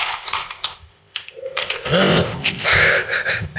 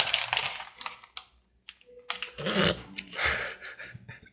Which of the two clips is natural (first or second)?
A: second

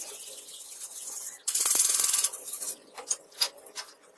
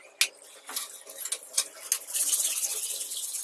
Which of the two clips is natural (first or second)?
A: second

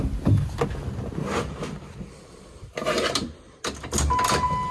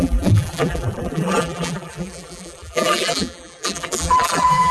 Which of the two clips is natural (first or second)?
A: first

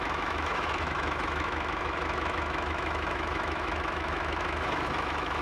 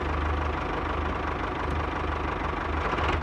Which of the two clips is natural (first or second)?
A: second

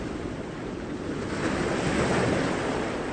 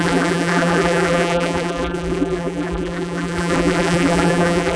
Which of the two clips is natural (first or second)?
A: first